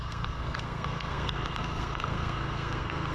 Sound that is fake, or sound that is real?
fake